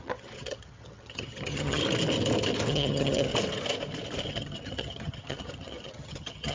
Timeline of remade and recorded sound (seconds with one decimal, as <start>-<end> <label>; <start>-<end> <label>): 0.0-1.8 remade; 1.8-2.7 recorded; 2.7-3.3 remade; 3.3-4.3 recorded; 4.3-6.5 remade

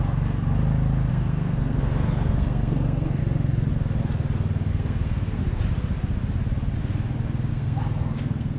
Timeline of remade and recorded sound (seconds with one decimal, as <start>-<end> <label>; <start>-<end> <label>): 0.0-1.1 recorded; 1.1-3.2 remade; 3.2-4.7 recorded; 4.7-5.4 remade; 5.4-7.5 recorded; 7.5-8.6 remade

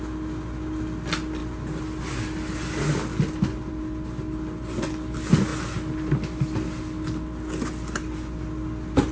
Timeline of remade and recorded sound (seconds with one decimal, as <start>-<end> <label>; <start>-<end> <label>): 0.0-9.1 recorded